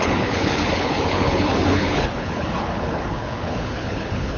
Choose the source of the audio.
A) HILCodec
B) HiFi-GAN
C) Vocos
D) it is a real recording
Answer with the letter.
A